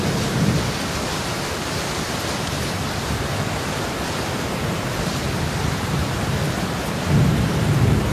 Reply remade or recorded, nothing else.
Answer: remade